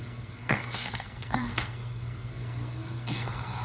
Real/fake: fake